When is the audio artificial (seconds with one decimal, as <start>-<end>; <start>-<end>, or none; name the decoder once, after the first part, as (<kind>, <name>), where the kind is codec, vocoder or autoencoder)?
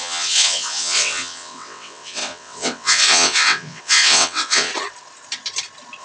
0.0-4.7 (vocoder, WaveNeXt)